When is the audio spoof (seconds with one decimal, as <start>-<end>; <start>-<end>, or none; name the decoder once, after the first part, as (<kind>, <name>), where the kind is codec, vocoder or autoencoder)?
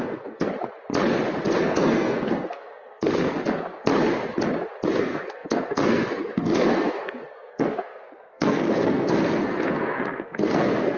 0.0-0.5 (codec, SNAC); 1.5-3.9; 5.0-11.0